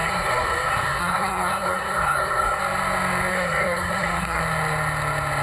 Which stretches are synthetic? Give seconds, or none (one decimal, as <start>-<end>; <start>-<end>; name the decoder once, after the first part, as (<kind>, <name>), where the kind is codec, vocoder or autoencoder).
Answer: 0.0-2.6 (codec, SNAC); 3.3-4.4